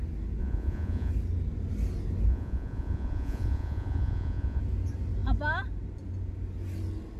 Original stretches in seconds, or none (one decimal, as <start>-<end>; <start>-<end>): 0.0-0.4; 1.1-2.3; 4.6-7.2